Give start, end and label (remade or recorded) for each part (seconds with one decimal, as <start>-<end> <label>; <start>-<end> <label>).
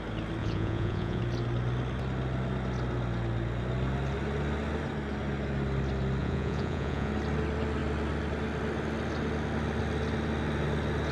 0.0-0.4 recorded; 0.4-1.2 remade; 1.2-6.2 recorded; 6.2-7.1 remade; 7.1-11.1 recorded